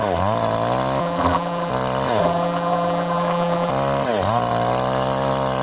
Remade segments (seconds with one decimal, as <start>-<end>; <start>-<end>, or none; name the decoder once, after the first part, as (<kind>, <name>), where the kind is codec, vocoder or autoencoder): 1.0-1.7 (vocoder, BigVGAN v2); 2.2-3.7